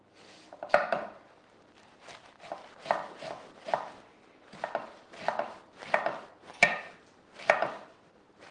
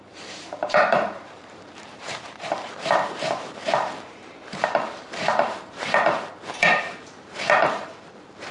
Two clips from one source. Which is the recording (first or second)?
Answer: first